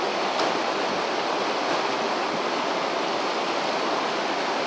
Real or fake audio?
real